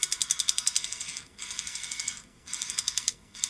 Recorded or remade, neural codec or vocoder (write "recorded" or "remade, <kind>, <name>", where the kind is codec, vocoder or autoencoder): remade, codec, SNAC